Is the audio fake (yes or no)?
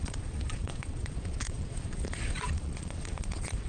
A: yes